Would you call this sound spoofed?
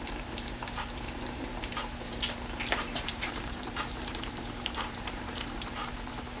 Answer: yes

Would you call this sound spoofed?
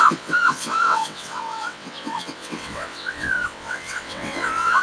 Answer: yes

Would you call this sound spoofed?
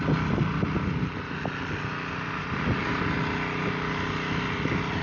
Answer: no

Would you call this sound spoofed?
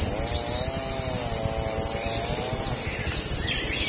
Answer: no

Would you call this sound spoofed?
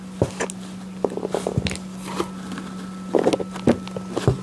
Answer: no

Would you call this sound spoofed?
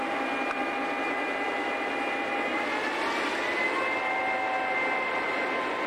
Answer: no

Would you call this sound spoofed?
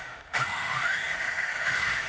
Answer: yes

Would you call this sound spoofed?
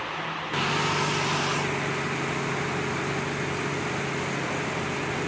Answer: no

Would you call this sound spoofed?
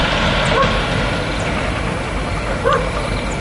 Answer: no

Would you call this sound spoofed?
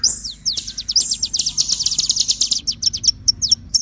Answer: no